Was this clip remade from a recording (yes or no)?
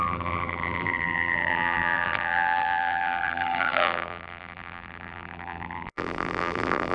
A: yes